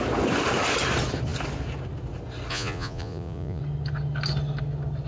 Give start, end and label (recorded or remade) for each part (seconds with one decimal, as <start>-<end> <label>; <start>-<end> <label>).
0.0-2.5 recorded; 2.5-3.6 remade; 3.6-5.1 recorded